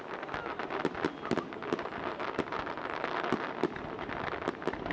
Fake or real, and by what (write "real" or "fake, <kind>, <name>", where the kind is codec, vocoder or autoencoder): real